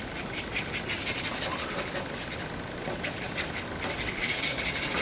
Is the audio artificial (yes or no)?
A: no